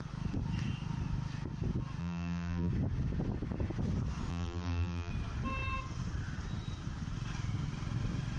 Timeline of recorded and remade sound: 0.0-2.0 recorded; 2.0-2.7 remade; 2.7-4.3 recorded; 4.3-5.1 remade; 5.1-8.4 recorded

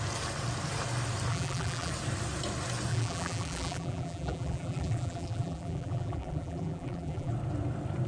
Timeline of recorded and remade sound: 0.0-1.3 recorded; 1.3-1.9 remade; 1.9-2.9 recorded; 2.9-7.3 remade; 7.3-8.1 recorded